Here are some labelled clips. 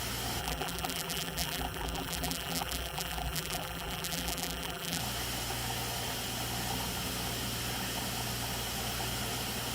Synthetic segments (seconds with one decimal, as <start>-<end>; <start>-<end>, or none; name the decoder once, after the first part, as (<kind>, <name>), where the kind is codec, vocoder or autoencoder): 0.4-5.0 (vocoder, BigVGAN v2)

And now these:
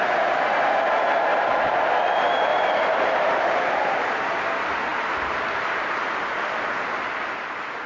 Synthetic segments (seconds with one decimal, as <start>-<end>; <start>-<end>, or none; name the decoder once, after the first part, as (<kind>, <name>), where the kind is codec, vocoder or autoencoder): 1.3-1.8 (vocoder, BigVGAN v2); 2.5-4.2; 4.9-6.1

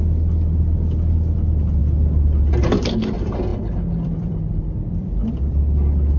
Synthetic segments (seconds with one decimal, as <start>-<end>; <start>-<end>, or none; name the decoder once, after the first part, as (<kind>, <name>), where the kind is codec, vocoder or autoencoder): 3.5-5.6 (vocoder, BigVGAN v2)

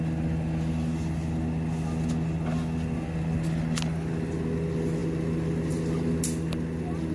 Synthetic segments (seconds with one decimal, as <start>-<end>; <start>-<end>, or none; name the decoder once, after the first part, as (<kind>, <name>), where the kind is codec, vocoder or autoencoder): none